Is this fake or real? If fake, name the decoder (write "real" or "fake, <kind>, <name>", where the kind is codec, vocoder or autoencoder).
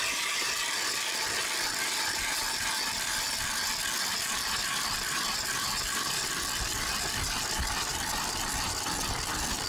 real